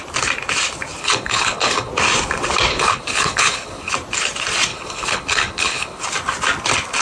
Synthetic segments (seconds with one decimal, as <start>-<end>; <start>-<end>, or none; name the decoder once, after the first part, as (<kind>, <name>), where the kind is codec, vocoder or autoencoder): 1.0-1.9 (codec, HILCodec); 2.7-3.9; 4.7-6.0